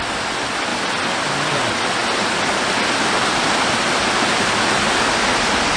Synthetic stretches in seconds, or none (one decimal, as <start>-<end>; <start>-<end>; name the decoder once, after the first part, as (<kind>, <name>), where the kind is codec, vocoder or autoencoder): none